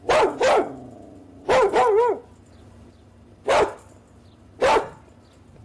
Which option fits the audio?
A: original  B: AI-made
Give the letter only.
A